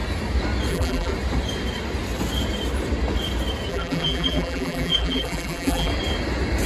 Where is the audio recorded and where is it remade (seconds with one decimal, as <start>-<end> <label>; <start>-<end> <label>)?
0.0-0.7 recorded; 0.7-1.1 remade; 1.1-3.7 recorded; 3.7-5.9 remade; 5.9-6.7 recorded